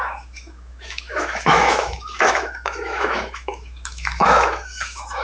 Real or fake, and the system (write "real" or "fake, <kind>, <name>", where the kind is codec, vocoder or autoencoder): fake, autoencoder, DAC-VAE